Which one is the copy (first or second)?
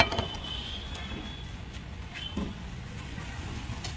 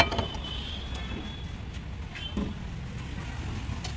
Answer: first